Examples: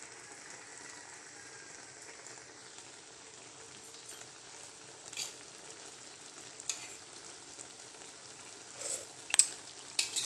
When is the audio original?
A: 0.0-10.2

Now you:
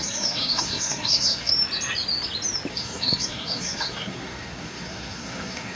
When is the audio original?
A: 1.5-2.7

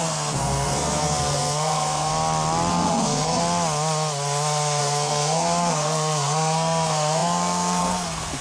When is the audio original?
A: 2.1-2.7; 3.4-4.8

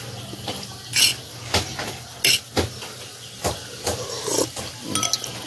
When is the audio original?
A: 0.0-5.5

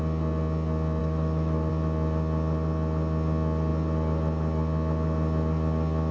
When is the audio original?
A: 0.0-1.0; 1.7-6.1

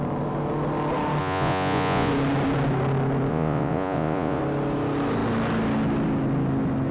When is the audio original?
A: 0.0-1.2; 2.1-3.3; 4.4-6.9

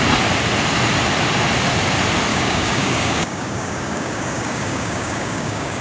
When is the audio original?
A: 0.0-2.3